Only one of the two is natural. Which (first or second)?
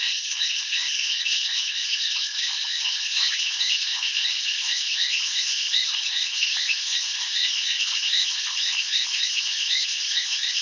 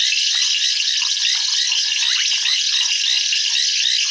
second